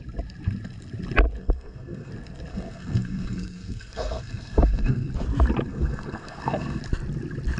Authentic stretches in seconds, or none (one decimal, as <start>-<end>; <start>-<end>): 0.0-1.4; 2.1-2.5; 5.1-5.7; 6.8-7.6